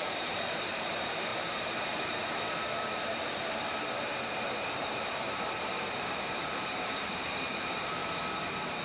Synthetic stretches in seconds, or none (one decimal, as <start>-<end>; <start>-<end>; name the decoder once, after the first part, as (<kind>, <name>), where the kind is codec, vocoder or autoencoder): 0.0-8.0 (vocoder, BigVGAN v2)